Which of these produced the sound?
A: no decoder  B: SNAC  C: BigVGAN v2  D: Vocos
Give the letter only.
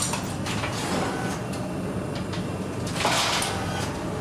A